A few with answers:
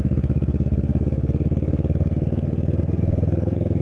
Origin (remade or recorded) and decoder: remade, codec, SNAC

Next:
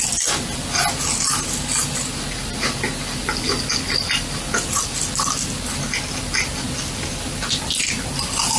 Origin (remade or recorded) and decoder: recorded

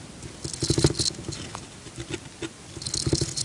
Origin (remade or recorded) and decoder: recorded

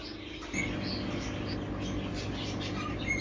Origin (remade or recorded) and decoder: recorded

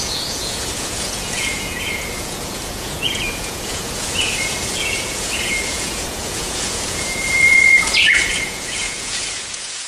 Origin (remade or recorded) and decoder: remade, vocoder, Vocos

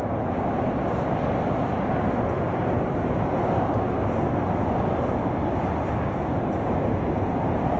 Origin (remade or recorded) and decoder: recorded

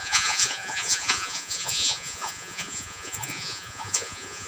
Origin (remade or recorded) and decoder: remade, vocoder, Vocos